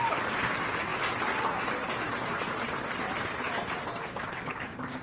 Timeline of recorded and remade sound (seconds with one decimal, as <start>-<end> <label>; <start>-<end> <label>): 0.0-0.9 remade; 0.9-1.9 recorded; 1.9-3.3 remade; 3.3-4.6 recorded; 4.6-5.0 remade